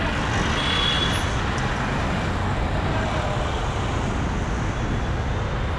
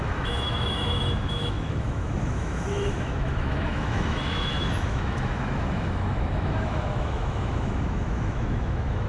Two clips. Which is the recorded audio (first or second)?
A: first